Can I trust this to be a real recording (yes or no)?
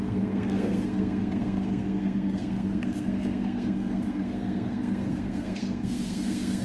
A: no